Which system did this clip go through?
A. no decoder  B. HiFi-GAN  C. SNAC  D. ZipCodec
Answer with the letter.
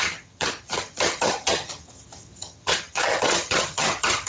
B